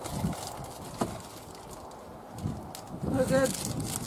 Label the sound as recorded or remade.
recorded